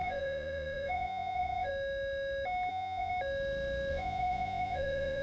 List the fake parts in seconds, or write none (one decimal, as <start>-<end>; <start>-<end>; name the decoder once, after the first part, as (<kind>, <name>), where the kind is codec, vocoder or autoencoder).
0.0-1.7 (vocoder, Vocos); 2.7-3.1; 3.9-5.2